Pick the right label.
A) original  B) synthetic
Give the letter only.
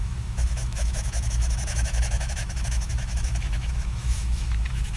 B